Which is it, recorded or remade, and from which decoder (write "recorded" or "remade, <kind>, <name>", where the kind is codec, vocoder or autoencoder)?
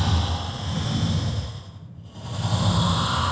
recorded